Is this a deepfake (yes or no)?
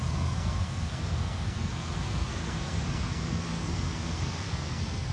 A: yes